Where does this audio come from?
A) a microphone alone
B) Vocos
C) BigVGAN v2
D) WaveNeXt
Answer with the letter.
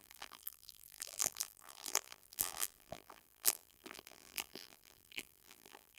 C